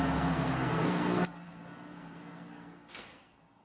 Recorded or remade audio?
remade